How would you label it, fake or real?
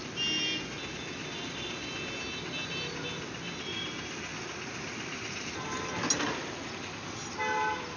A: real